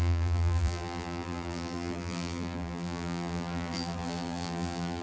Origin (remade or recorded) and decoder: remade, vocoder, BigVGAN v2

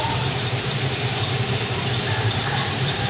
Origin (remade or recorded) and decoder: remade, vocoder, BigVGAN v2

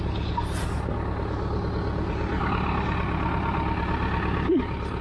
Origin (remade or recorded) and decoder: recorded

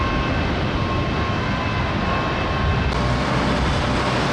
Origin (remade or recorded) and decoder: recorded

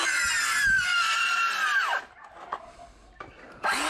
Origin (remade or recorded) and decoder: recorded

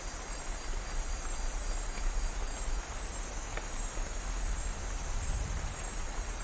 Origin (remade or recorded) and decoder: recorded